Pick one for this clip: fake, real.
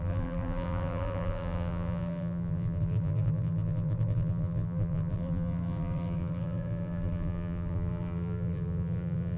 fake